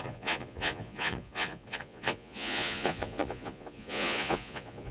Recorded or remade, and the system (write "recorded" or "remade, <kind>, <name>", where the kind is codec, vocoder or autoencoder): remade, vocoder, Vocos